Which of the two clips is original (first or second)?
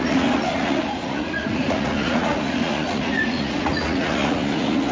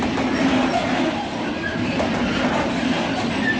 second